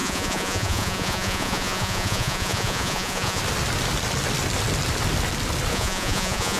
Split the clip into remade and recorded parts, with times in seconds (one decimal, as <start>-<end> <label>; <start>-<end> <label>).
0.0-3.4 remade; 3.4-5.7 recorded; 5.7-6.6 remade